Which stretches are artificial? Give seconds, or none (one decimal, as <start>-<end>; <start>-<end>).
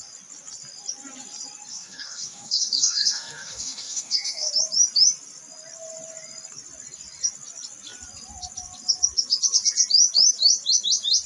1.7-4.5